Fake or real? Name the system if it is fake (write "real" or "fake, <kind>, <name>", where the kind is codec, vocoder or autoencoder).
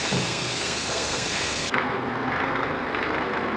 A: fake, codec, SNAC